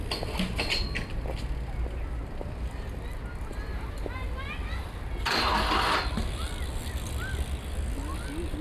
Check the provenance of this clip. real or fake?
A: real